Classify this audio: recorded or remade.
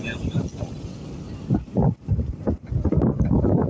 recorded